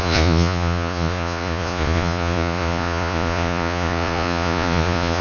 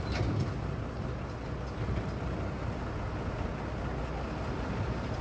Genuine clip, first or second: second